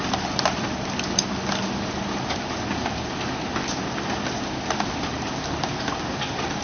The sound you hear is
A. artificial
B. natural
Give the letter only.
B